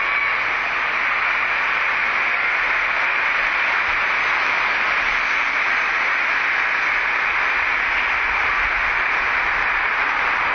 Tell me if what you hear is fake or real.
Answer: real